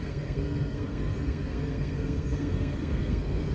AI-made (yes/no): yes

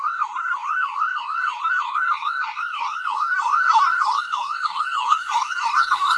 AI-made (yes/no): yes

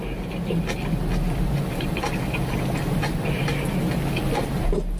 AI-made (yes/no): no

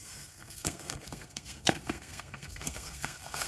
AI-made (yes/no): yes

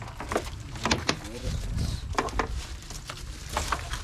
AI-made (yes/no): no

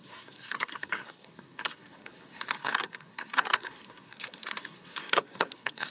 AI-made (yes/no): yes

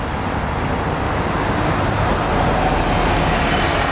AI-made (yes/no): no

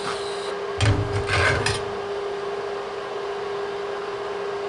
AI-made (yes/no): no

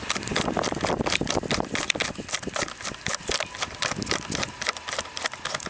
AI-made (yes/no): no